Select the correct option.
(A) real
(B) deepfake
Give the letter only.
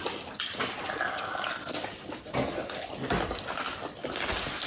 A